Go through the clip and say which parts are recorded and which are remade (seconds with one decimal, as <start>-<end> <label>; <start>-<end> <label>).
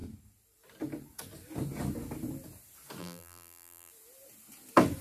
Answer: 0.0-3.0 recorded; 3.0-3.9 remade; 3.9-5.0 recorded